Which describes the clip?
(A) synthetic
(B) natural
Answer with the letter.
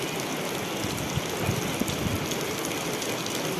B